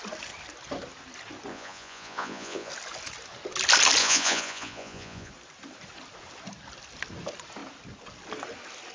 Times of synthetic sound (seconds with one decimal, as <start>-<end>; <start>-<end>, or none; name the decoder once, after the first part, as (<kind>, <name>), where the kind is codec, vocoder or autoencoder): 1.5-2.7 (vocoder, Vocos); 4.0-5.3

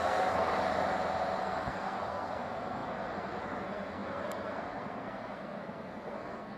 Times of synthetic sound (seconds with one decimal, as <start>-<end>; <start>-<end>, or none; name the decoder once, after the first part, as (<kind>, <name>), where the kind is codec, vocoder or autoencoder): 0.0-0.5 (codec, SNAC); 1.4-6.6

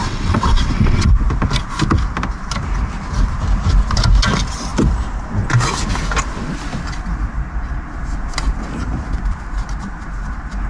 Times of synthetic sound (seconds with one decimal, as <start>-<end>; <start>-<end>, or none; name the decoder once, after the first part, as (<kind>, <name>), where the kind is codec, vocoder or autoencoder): 0.0-1.1 (vocoder, WaveNeXt)

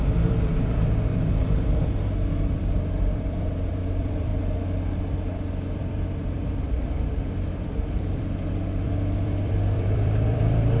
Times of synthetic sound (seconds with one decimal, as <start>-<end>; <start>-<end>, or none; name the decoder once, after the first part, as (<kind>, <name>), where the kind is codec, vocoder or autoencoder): 0.0-1.1 (vocoder, BigVGAN v2); 2.6-4.3; 5.8-10.8